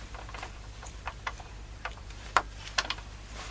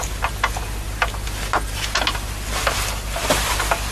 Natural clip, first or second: second